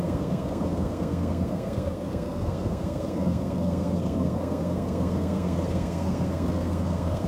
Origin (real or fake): fake